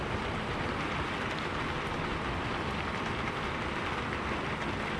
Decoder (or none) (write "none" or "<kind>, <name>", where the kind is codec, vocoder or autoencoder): none